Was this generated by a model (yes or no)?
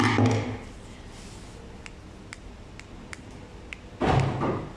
no